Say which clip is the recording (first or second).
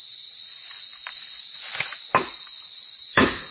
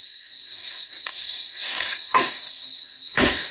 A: first